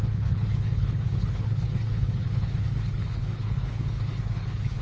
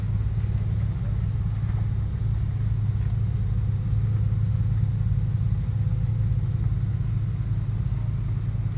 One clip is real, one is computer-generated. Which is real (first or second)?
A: second